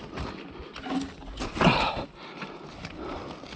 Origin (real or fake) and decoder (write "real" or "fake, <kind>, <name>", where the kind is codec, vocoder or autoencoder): real